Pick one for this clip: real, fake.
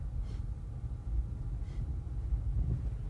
real